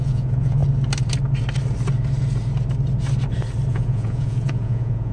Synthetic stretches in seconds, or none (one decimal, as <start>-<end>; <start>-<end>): 0.0-0.6; 3.7-5.1

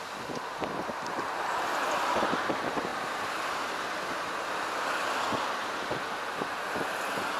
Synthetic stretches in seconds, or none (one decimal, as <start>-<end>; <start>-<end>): 2.9-3.6

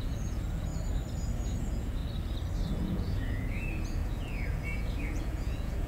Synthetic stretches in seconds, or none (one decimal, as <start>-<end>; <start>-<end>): 0.0-0.7; 1.6-2.0; 2.7-5.9

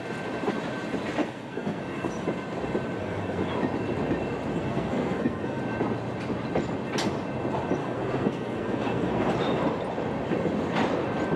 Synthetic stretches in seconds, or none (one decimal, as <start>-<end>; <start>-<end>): 1.2-2.1; 3.0-3.5; 4.5-5.6; 7.8-9.3

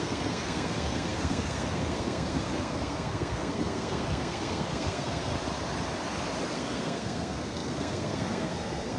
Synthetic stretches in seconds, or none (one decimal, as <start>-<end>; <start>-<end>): 0.0-5.3; 6.5-9.0